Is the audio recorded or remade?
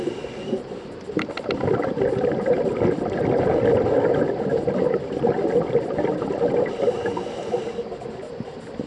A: recorded